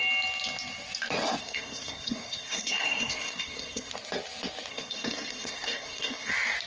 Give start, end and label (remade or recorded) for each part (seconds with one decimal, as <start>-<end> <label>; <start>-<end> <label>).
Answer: 0.0-1.4 recorded; 1.4-3.9 remade; 3.9-4.7 recorded; 4.7-6.3 remade; 6.3-6.7 recorded